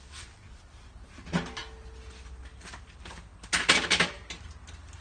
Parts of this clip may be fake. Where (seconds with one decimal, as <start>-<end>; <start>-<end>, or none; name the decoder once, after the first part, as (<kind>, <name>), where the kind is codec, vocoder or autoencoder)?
0.0-0.6 (vocoder, WaveNeXt)